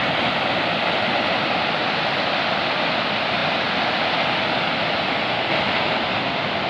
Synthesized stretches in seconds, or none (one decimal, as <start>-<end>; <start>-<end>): none